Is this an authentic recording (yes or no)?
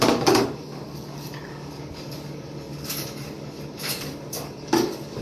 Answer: no